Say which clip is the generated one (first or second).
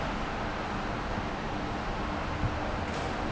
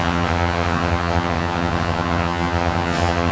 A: second